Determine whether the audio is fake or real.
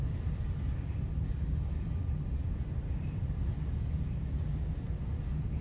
real